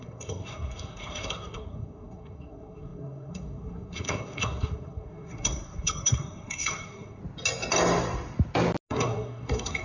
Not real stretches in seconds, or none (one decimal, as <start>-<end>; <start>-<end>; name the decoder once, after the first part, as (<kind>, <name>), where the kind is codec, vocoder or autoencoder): 0.0-7.2 (codec, SNAC); 8.9-9.8